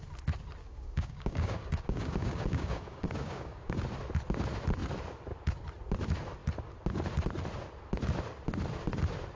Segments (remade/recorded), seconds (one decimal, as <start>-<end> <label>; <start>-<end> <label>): 0.0-0.6 recorded; 0.6-3.7 remade; 3.7-9.4 recorded